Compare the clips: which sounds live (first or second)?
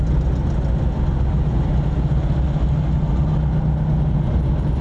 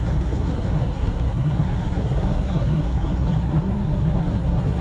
first